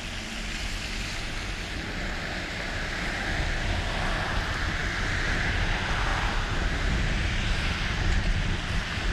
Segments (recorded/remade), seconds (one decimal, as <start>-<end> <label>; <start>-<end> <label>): 0.0-6.1 recorded; 6.1-7.6 remade; 7.6-9.1 recorded